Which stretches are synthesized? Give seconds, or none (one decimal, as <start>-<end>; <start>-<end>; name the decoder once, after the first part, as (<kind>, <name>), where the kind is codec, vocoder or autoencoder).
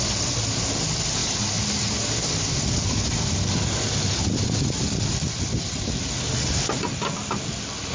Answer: none